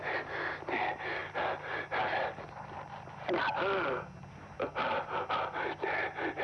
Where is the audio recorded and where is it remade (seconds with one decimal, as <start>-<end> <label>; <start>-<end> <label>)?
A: 0.0-6.4 recorded